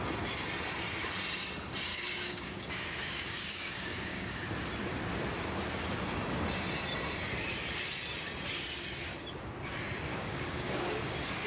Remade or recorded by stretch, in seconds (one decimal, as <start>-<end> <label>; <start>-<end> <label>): 0.0-1.9 recorded; 1.9-4.5 remade; 4.5-10.1 recorded; 10.1-10.8 remade; 10.8-11.5 recorded